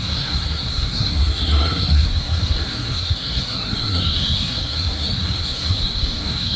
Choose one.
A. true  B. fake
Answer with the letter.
B